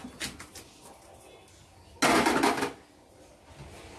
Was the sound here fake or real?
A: real